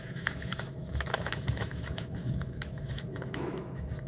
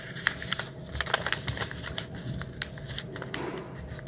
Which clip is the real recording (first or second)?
second